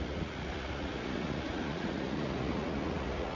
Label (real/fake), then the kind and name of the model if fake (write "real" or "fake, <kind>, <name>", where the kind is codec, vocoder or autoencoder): fake, vocoder, Vocos